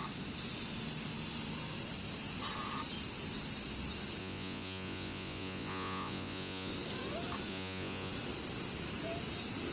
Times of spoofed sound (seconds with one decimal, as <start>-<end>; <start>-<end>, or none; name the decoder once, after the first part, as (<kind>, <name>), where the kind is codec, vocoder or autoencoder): 4.2-6.7 (vocoder, Vocos); 7.5-8.1

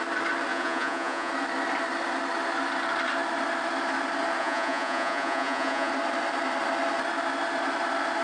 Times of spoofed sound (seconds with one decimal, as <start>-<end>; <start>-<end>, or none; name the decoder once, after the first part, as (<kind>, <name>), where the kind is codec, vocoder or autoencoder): 0.5-1.3 (vocoder, Vocos); 4.4-5.9

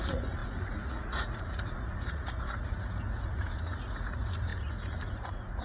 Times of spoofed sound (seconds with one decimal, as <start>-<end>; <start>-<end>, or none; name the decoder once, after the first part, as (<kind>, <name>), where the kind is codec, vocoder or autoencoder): 0.0-5.6 (vocoder, Vocos)

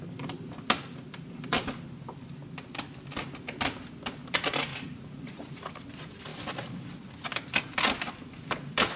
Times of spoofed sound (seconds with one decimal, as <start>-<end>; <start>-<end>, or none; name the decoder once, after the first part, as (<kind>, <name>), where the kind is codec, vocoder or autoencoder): 4.7-5.7 (vocoder, Vocos)

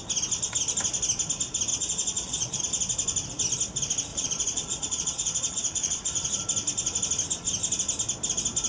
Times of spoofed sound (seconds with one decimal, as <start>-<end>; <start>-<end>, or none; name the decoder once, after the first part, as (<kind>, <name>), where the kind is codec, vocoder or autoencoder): 1.7-2.6 (vocoder, Vocos); 4.1-6.4

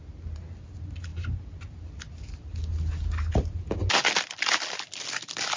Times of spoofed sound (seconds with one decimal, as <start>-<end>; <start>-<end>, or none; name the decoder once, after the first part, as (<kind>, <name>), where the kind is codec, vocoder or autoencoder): none

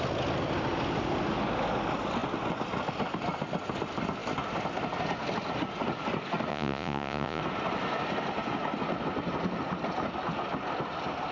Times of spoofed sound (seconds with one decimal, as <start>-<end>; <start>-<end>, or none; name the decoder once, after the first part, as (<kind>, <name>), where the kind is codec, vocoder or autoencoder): 6.5-7.4 (vocoder, Vocos)

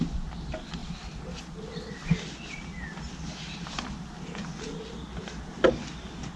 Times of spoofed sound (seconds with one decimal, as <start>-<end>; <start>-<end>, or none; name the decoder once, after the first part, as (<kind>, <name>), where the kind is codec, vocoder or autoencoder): none